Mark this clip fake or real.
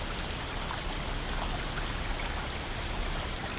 real